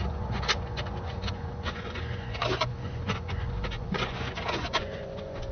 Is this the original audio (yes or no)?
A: no